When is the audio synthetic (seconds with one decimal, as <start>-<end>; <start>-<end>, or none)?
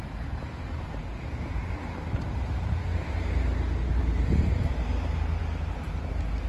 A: 1.0-1.7